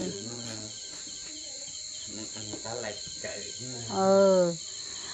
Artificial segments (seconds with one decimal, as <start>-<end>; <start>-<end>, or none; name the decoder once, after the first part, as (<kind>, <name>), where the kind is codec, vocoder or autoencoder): 0.0-3.1 (vocoder, Vocos)